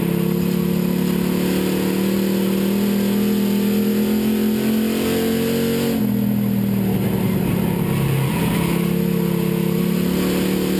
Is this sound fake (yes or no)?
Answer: no